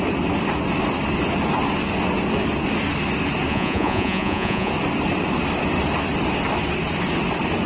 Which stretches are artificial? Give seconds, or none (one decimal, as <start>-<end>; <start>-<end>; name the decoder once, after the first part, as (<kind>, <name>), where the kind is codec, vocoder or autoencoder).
3.5-4.7 (vocoder, Vocos)